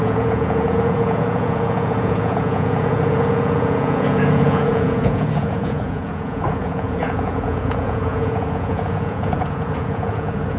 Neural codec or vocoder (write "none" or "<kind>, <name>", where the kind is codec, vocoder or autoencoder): vocoder, Vocos